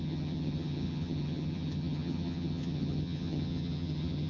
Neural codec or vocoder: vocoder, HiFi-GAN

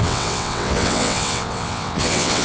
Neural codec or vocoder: vocoder, WaveNeXt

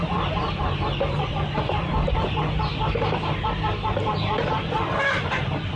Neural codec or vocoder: none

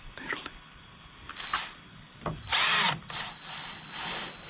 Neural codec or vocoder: vocoder, BigVGAN v2